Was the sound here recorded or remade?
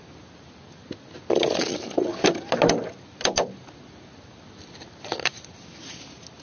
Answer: recorded